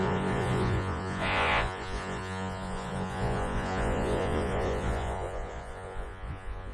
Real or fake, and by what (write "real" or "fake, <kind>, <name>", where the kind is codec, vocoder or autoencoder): fake, vocoder, Vocos